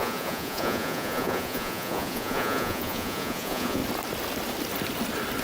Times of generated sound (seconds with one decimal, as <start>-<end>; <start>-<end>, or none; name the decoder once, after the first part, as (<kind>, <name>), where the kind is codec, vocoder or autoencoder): 0.0-3.8 (vocoder, Vocos)